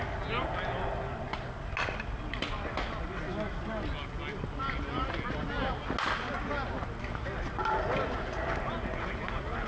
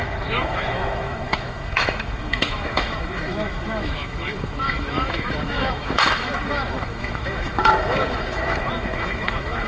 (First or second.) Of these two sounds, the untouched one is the first